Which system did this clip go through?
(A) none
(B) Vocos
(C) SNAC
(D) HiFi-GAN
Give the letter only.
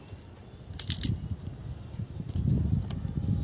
A